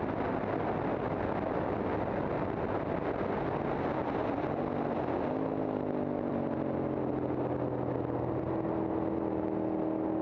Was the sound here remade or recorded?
recorded